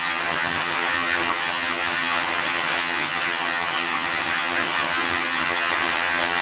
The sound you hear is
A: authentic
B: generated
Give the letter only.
B